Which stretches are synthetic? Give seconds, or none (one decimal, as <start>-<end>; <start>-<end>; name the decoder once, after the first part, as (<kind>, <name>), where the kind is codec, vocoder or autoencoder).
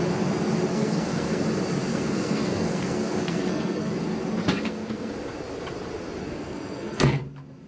0.7-1.4 (codec, SNAC); 1.9-3.9; 4.4-5.1; 6.2-7.2